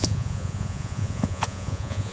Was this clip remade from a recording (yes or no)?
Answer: yes